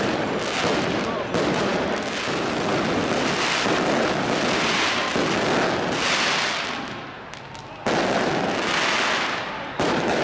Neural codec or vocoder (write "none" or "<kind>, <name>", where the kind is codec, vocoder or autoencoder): none